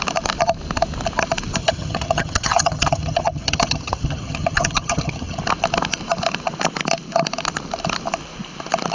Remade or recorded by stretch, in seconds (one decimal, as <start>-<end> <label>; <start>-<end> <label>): 0.0-1.6 recorded; 1.6-5.4 remade; 5.4-8.9 recorded